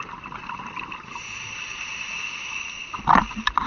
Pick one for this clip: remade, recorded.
recorded